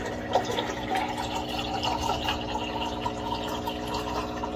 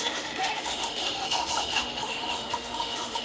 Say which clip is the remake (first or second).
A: second